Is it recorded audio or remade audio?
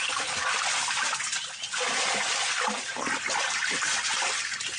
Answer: recorded